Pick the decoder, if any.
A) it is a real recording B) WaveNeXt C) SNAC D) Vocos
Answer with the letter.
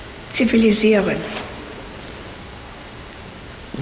A